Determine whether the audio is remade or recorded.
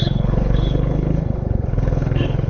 remade